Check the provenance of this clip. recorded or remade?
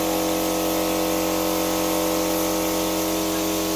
recorded